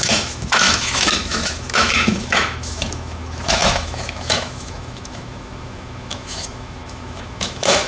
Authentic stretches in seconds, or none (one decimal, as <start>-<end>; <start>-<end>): none